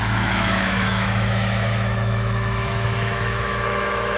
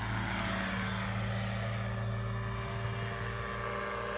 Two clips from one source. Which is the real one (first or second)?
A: second